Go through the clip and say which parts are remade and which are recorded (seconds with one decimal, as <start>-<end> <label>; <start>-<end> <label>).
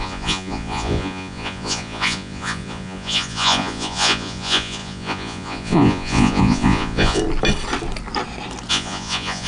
0.0-7.2 remade; 7.2-8.7 recorded; 8.7-9.5 remade